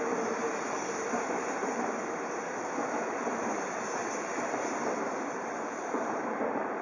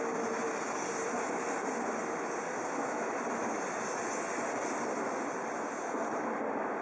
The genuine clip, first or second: second